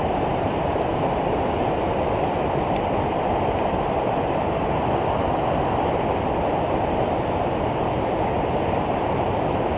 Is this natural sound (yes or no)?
yes